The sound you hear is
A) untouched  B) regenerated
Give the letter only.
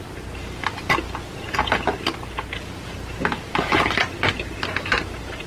A